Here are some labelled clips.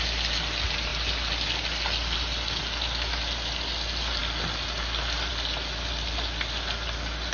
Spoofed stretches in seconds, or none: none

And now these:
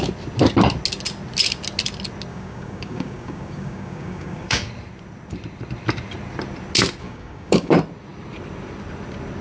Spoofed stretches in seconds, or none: 2.3-4.7 (codec, DAC); 7.0-7.7

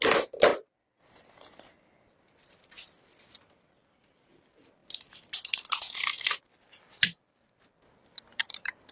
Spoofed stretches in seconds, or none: 8.3-8.9 (vocoder, BigVGAN v2)

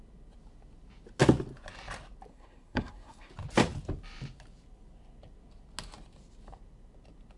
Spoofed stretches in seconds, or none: 2.3-3.3 (codec, SNAC)

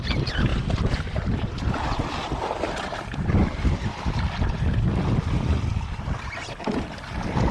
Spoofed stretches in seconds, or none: none

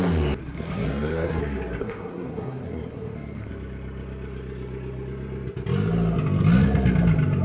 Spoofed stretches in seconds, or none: 0.4-1.4 (codec, SNAC); 1.8-3.5

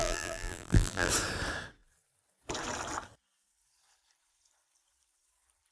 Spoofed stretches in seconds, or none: 0.0-1.1 (vocoder, BigVGAN v2)